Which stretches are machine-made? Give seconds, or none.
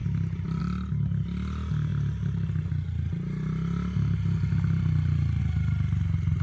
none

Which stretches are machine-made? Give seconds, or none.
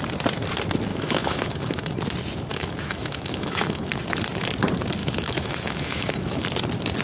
0.9-1.9 (autoencoder, DAC-VAE); 2.5-3.9; 5.0-6.4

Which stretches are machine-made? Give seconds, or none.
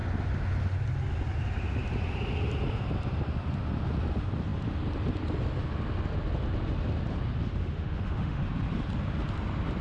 7.6-8.4 (autoencoder, DAC-VAE)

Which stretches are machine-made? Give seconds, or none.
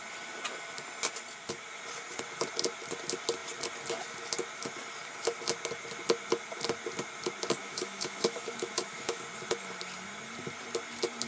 7.6-9.2 (autoencoder, DAC-VAE)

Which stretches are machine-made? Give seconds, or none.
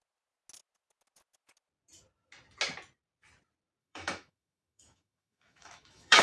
3.8-6.2 (autoencoder, DAC-VAE)